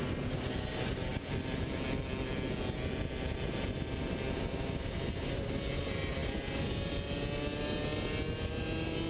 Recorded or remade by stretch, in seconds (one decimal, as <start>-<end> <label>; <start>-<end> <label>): 0.0-9.1 recorded